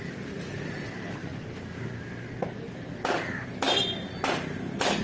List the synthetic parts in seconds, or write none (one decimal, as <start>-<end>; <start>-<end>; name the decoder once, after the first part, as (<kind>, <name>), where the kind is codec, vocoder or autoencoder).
none